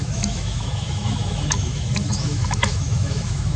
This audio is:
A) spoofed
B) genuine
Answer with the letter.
A